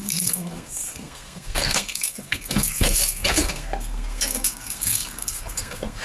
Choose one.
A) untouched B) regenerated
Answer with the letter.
B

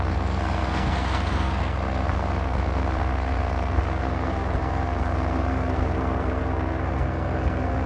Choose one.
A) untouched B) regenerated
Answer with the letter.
B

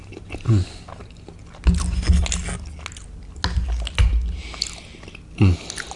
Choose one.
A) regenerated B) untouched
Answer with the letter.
B